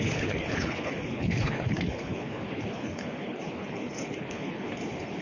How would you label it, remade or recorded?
remade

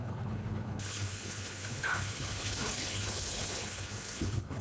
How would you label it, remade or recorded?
remade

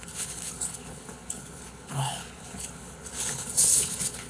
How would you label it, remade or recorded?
remade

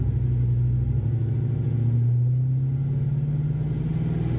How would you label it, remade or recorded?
recorded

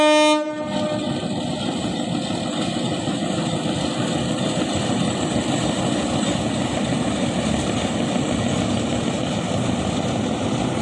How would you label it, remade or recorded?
recorded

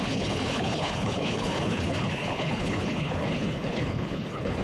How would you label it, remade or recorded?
remade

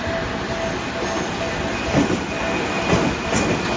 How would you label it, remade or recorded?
recorded